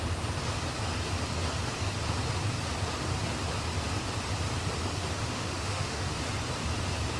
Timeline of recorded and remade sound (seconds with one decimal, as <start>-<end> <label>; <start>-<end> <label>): 0.0-5.2 recorded; 5.2-6.2 remade; 6.2-7.2 recorded